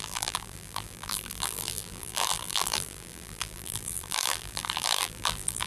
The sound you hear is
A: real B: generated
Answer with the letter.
B